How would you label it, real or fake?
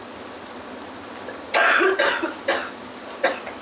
real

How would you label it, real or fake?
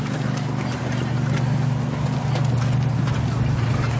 real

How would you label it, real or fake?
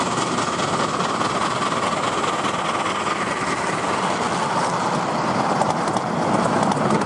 real